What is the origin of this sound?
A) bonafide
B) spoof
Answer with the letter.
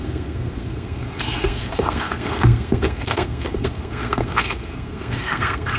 B